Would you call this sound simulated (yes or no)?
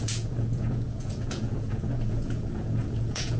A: yes